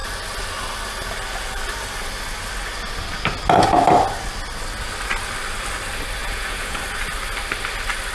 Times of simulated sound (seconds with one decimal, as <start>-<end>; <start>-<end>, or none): 6.2-6.8